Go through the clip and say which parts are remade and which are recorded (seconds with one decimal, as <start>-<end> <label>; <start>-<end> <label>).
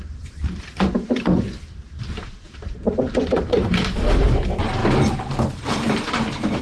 0.0-4.8 remade; 4.8-5.7 recorded; 5.7-6.6 remade